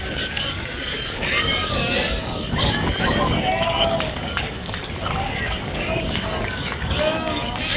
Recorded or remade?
remade